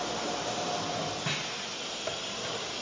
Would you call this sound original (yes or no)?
yes